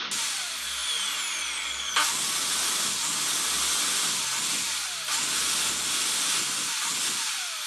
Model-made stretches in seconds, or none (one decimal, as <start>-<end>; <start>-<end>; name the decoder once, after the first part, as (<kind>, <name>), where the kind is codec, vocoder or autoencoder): none